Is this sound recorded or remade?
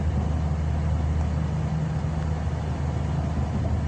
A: recorded